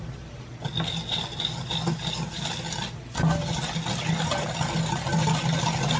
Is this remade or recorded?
recorded